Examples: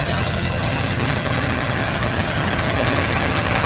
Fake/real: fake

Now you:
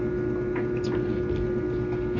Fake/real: real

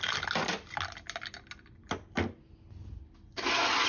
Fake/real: real